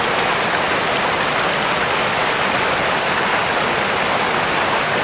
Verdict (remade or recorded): recorded